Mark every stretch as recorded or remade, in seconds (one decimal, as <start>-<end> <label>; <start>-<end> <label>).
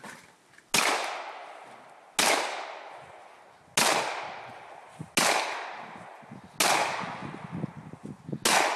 0.0-8.8 recorded